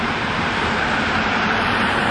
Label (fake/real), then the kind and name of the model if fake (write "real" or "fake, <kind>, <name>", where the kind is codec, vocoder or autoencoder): fake, vocoder, BigVGAN v2